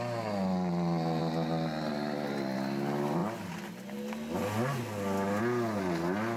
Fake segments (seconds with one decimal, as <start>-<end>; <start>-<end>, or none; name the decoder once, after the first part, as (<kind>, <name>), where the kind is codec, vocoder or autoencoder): none